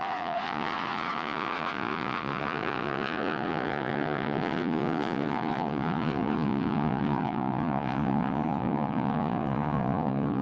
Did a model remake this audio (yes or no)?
yes